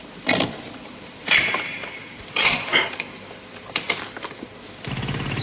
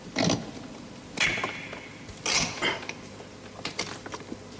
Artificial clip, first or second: first